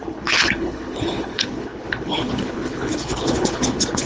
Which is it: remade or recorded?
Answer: remade